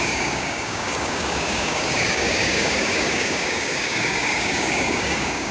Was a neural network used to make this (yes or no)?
yes